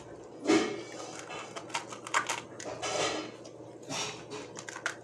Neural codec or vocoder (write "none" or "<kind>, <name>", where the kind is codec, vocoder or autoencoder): none